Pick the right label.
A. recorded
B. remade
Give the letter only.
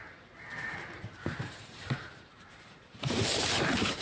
B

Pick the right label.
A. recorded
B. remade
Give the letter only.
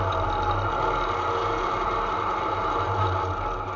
A